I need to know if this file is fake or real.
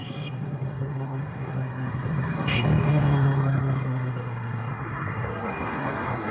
fake